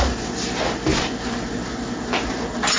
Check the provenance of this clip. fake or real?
real